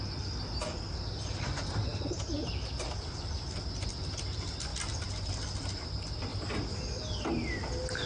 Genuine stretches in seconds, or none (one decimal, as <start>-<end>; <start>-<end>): 0.0-8.1